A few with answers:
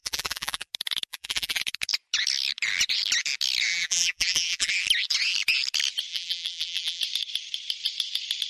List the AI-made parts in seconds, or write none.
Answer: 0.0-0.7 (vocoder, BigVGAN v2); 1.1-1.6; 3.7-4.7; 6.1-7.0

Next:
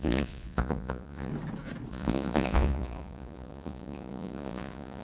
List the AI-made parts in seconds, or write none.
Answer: 0.0-1.3 (vocoder, Vocos); 1.9-5.0

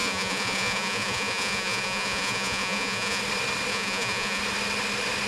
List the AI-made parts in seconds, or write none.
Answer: 0.0-3.2 (vocoder, Vocos); 3.7-4.4

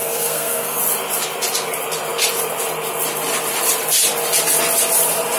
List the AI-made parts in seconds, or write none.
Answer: 0.0-0.8 (codec, SNAC)

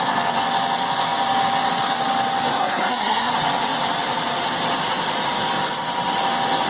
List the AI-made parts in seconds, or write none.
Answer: 2.5-3.3 (codec, SNAC)

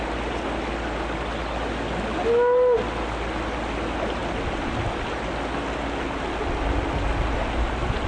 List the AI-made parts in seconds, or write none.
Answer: none